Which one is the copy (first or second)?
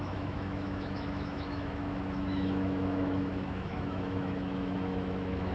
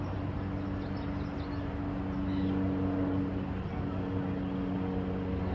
first